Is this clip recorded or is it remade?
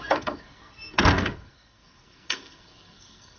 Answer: remade